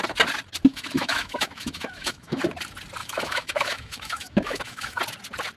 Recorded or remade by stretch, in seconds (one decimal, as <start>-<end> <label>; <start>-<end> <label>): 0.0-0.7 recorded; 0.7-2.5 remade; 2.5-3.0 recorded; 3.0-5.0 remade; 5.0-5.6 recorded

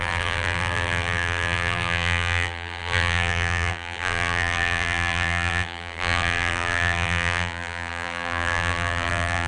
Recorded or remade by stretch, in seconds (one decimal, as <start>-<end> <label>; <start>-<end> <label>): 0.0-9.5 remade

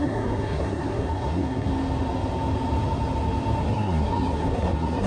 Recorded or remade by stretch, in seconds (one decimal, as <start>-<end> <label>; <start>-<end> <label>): 0.0-1.7 remade; 1.7-3.6 recorded; 3.6-5.1 remade

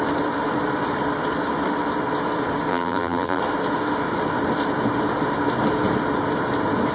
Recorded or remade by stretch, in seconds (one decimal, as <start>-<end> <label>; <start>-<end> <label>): 0.0-2.7 recorded; 2.7-3.4 remade; 3.4-6.9 recorded

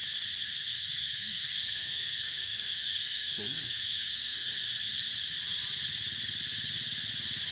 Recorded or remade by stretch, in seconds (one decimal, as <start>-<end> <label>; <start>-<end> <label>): 0.0-0.7 recorded; 0.7-4.5 remade; 4.5-7.5 recorded

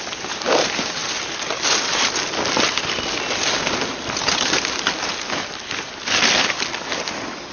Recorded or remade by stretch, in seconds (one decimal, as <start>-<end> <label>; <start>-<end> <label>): 0.0-7.5 recorded

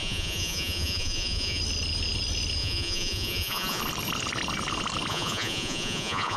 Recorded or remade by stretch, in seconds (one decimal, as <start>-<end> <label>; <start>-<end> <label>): 0.0-1.6 remade; 1.6-2.6 recorded; 2.6-3.8 remade; 3.8-5.1 recorded; 5.1-6.4 remade

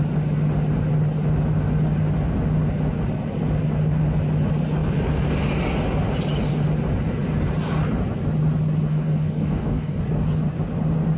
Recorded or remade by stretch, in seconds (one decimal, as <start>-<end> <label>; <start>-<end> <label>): 0.0-8.9 recorded; 8.9-10.0 remade; 10.0-11.2 recorded